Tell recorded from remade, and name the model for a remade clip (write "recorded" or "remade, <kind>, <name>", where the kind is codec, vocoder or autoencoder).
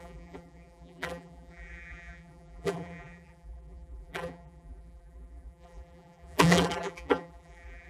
remade, vocoder, BigVGAN v2